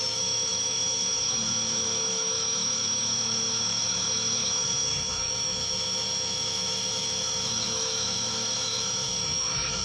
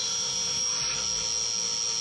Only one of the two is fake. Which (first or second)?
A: first